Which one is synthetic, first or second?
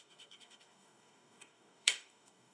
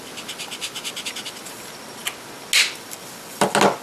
first